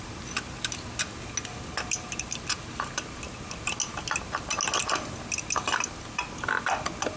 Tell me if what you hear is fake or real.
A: real